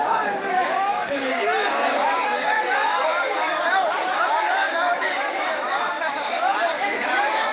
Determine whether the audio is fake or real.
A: fake